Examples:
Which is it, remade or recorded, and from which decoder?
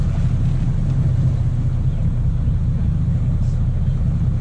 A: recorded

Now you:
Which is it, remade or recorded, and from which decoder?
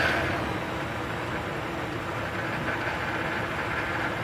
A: recorded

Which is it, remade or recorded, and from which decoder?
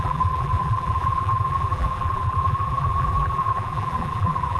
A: remade, vocoder, BigVGAN v2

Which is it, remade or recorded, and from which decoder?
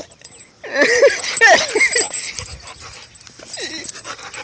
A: recorded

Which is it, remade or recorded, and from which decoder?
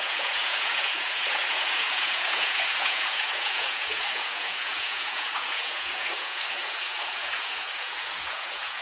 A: remade, vocoder, Vocos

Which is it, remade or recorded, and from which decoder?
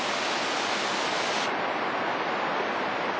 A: recorded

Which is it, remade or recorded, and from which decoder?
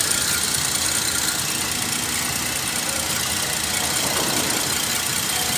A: recorded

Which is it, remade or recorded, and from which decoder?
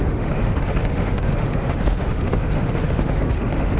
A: remade, autoencoder, DAC-VAE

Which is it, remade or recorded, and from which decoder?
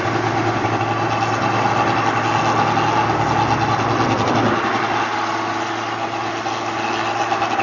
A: recorded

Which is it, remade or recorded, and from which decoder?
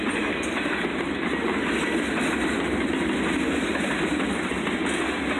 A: recorded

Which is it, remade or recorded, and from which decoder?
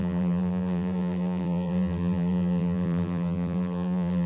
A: remade, vocoder, BigVGAN v2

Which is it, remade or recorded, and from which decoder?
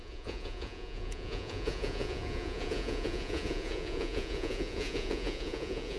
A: remade, vocoder, Vocos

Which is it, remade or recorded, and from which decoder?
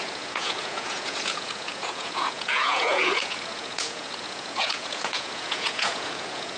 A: remade, vocoder, Vocos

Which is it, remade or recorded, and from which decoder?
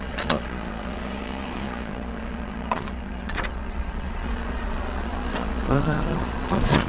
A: remade, vocoder, Vocos